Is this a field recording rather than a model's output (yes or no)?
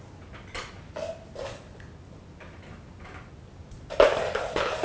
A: yes